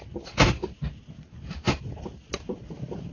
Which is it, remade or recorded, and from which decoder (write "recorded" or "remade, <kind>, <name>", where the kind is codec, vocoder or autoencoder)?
recorded